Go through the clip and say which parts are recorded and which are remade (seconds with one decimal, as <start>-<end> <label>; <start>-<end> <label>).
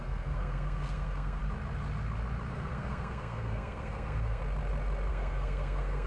0.0-1.4 remade; 1.4-2.5 recorded; 2.5-4.4 remade; 4.4-5.1 recorded; 5.1-6.1 remade